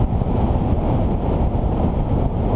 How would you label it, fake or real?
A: real